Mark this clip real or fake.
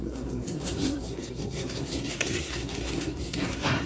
fake